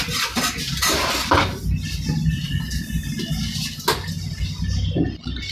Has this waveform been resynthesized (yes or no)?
no